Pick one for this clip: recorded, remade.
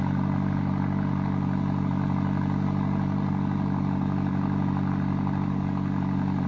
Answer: recorded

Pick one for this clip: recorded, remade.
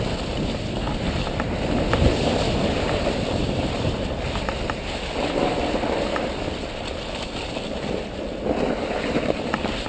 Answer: recorded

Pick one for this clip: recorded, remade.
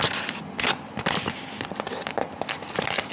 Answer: recorded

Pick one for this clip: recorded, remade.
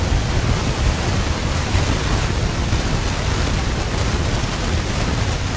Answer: recorded